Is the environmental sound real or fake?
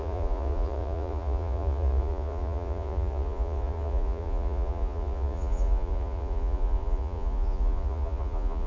fake